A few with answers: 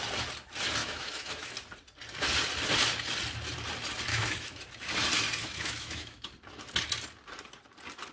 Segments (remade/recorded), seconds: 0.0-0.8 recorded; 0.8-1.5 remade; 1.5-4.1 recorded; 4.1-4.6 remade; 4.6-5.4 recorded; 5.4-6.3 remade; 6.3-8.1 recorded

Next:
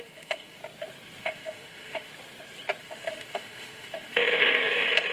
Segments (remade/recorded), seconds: 0.0-0.6 remade; 0.6-1.2 recorded; 1.2-2.1 remade; 2.1-2.8 recorded; 2.8-5.1 remade

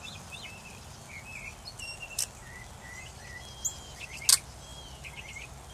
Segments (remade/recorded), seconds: 0.0-5.7 recorded

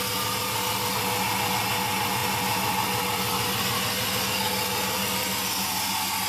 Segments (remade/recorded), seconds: 0.0-6.3 recorded

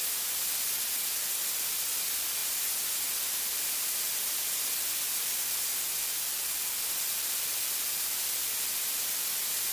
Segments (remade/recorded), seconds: 0.0-9.7 recorded

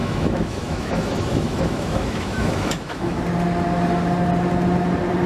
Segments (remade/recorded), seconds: 0.0-3.2 remade; 3.2-5.3 recorded

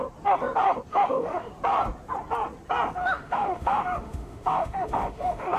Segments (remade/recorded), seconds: 0.0-0.9 recorded; 0.9-1.5 remade; 1.5-3.0 recorded; 3.0-5.6 remade